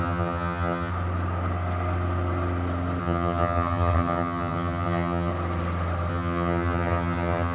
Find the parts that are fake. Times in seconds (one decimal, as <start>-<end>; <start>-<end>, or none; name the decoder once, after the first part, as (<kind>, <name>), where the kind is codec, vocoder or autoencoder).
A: 0.0-0.9 (vocoder, HiFi-GAN); 3.0-5.3; 6.1-7.5